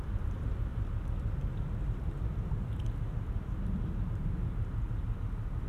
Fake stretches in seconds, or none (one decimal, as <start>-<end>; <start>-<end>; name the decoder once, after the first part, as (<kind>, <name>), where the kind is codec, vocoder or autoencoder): 0.0-0.7 (vocoder, BigVGAN v2); 4.1-5.7